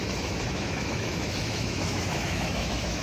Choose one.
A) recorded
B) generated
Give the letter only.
B